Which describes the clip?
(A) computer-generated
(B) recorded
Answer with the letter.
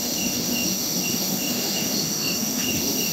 A